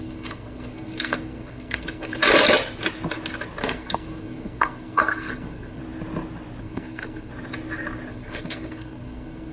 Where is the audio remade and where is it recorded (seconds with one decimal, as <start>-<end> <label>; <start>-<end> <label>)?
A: 0.0-2.2 remade; 2.2-3.6 recorded; 3.6-5.8 remade; 5.8-6.6 recorded; 6.6-7.3 remade; 7.3-8.1 recorded; 8.1-9.5 remade